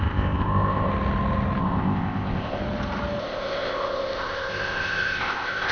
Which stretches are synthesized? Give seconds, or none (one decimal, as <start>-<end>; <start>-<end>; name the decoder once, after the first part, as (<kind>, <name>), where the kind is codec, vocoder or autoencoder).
0.0-0.9 (codec, ZipCodec); 1.6-2.6; 3.2-5.7

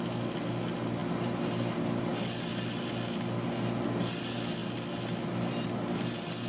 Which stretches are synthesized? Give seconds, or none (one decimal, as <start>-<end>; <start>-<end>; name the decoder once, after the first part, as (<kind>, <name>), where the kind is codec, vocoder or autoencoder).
none

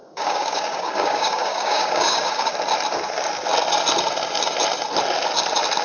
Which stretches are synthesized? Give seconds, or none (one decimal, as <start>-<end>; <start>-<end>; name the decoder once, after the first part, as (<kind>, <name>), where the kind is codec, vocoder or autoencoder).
0.0-2.5 (codec, DAC)

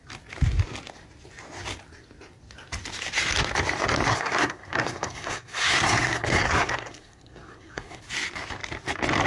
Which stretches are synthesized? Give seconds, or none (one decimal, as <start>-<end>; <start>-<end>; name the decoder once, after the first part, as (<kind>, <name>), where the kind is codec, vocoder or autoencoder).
4.1-8.0 (codec, SNAC)

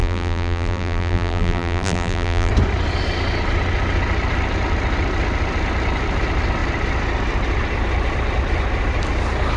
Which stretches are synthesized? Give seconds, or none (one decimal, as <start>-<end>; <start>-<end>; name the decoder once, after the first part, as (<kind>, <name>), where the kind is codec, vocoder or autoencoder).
0.0-2.5 (vocoder, BigVGAN v2)